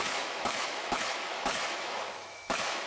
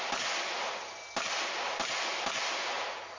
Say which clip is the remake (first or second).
first